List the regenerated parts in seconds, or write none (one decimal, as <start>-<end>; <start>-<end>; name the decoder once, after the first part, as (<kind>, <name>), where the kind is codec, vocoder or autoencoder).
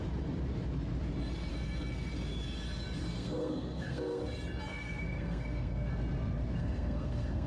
1.5-2.1 (codec, SNAC); 3.0-4.2; 4.7-5.9; 6.6-7.5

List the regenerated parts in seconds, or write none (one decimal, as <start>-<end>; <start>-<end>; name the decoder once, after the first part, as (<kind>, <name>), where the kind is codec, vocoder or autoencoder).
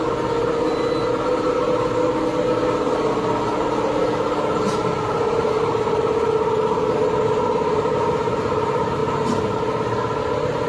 none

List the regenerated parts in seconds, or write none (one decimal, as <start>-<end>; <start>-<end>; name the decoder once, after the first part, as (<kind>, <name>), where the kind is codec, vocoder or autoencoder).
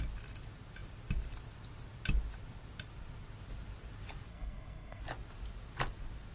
4.3-5.0 (codec, SNAC)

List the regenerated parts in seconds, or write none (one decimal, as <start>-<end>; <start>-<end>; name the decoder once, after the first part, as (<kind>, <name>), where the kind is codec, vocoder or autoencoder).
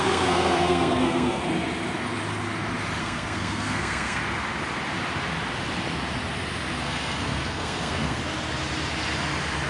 0.0-1.4 (codec, SNAC); 3.0-4.2; 6.8-8.2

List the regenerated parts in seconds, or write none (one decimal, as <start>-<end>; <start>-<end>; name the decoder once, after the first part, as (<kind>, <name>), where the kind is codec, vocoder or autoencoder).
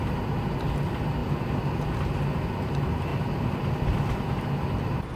none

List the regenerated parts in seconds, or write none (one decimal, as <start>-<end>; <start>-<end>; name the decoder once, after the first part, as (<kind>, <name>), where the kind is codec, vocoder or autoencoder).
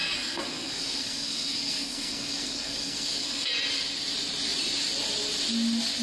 0.0-3.5 (codec, SNAC)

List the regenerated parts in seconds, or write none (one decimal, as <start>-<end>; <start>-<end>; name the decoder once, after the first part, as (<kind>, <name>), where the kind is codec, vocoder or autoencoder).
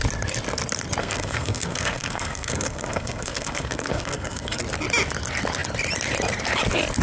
1.0-4.6 (codec, SNAC)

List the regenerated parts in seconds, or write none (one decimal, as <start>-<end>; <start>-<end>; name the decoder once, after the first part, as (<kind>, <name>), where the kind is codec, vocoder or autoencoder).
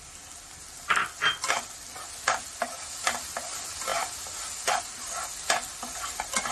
none